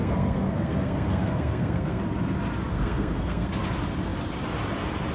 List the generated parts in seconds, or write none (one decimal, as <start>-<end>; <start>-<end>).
0.0-2.0; 2.7-3.5